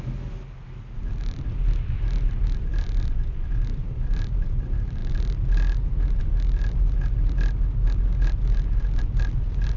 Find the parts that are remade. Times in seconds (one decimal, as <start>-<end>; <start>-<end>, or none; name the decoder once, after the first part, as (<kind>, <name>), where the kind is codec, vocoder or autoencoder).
none